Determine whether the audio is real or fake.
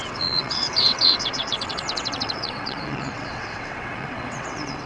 fake